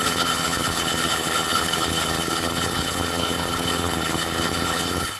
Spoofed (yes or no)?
yes